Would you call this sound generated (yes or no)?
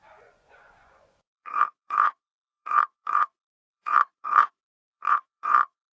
yes